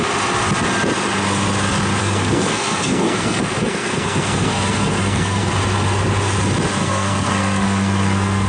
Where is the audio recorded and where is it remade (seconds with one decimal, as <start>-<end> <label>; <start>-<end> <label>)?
0.0-2.0 recorded; 2.0-5.5 remade; 5.5-6.8 recorded; 6.8-8.5 remade